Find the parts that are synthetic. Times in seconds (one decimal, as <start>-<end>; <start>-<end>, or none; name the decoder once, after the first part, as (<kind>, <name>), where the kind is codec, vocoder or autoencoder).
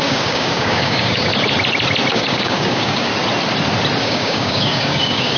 0.0-1.3 (codec, DAC); 2.1-3.1; 4.0-5.4